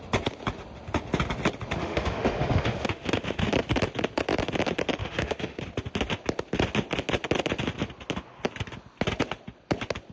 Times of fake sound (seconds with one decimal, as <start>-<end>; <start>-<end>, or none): 1.8-3.4; 5.0-5.6